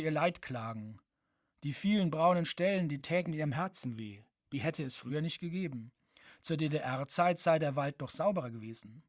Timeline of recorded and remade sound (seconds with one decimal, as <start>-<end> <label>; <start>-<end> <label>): 0.0-3.0 recorded; 3.0-5.1 remade; 5.1-9.1 recorded